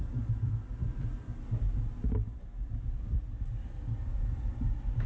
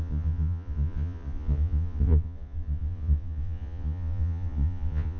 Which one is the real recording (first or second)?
first